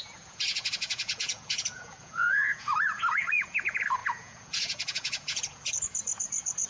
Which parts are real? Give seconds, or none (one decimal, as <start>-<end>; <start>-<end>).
none